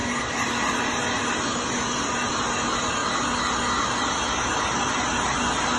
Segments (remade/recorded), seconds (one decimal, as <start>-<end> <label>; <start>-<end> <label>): 0.0-5.8 recorded